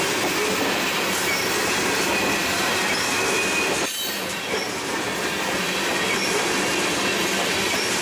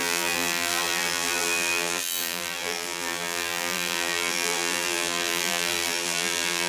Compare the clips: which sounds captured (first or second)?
first